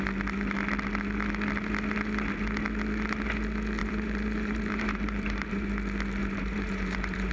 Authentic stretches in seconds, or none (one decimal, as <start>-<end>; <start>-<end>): 0.0-3.8; 5.7-6.2